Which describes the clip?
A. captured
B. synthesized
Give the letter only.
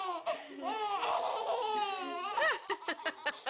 A